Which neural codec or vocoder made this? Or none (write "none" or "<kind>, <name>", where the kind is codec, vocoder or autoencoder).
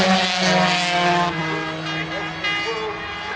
none